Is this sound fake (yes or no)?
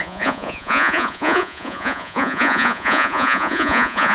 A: yes